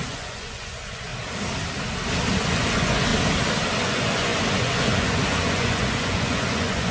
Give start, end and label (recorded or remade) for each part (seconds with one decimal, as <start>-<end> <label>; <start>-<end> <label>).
0.0-1.1 remade; 1.1-2.4 recorded; 2.4-3.1 remade; 3.1-3.8 recorded; 3.8-6.9 remade